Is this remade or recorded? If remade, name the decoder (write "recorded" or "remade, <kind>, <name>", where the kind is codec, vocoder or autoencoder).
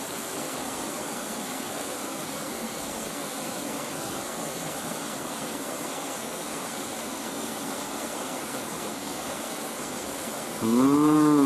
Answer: remade, codec, SNAC